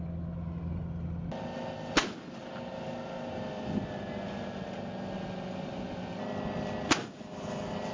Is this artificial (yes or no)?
no